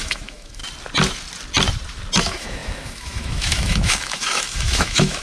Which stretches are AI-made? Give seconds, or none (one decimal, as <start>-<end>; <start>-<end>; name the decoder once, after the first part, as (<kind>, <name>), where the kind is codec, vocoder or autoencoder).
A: 0.0-0.6 (autoencoder, DAC-VAE); 2.2-5.2